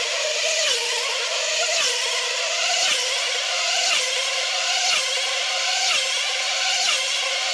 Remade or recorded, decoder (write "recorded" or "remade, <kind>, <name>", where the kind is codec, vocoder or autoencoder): recorded